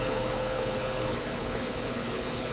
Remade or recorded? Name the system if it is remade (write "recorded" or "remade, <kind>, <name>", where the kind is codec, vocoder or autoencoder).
remade, codec, HILCodec